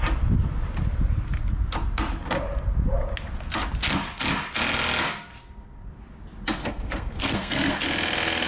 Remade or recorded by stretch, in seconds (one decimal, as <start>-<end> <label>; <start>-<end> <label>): 0.0-6.6 recorded; 6.6-7.8 remade; 7.8-8.5 recorded